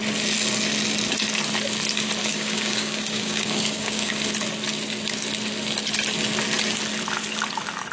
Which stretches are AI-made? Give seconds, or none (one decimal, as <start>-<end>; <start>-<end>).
2.2-4.1